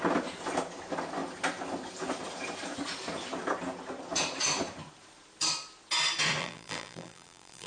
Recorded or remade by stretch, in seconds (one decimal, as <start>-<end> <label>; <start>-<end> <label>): 0.0-6.4 recorded; 6.4-7.7 remade